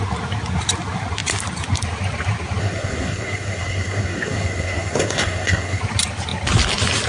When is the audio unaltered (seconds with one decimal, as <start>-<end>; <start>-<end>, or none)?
0.0-2.6; 5.8-7.1